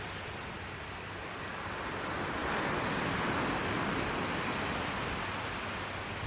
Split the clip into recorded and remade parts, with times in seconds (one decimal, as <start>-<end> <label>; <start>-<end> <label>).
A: 0.0-6.3 recorded